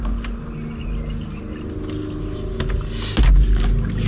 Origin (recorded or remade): recorded